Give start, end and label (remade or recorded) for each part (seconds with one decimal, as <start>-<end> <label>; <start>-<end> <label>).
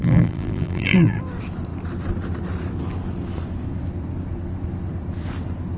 0.0-1.2 remade; 1.2-5.8 recorded